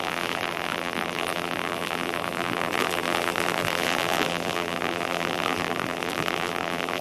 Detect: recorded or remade remade